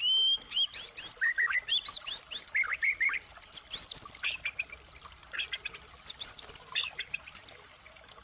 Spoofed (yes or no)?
no